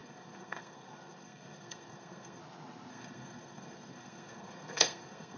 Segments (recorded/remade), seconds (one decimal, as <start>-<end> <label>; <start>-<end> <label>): 0.0-2.4 remade; 2.4-2.9 recorded; 2.9-5.4 remade